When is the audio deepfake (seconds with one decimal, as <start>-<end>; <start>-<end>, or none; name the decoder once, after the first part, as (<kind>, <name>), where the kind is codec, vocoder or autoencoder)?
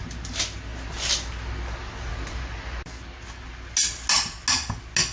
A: none